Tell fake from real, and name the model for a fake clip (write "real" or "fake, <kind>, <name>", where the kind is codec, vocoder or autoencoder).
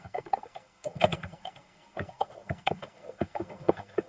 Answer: fake, codec, SNAC